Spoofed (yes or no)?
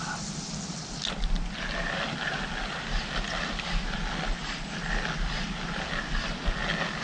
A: no